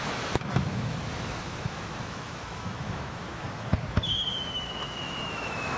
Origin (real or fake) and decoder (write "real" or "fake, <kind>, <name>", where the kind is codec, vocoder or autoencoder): fake, autoencoder, DAC-VAE